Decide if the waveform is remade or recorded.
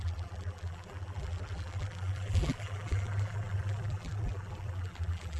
remade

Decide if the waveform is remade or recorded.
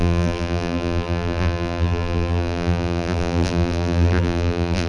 remade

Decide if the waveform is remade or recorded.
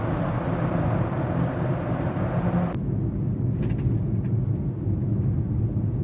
recorded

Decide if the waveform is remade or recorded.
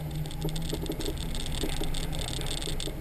recorded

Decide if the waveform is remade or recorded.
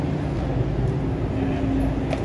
recorded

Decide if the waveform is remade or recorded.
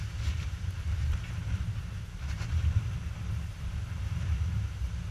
remade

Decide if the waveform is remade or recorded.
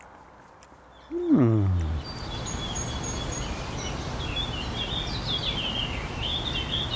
recorded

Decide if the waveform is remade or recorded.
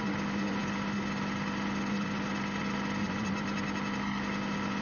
recorded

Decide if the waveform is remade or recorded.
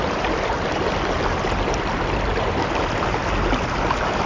recorded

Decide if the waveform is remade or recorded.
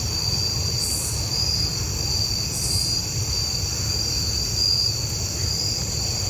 recorded